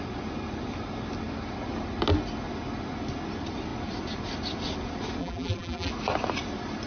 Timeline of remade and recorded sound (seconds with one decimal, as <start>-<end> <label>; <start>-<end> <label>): 0.0-5.2 recorded; 5.2-5.9 remade; 5.9-6.9 recorded